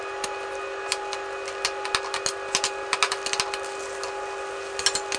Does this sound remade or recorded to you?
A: recorded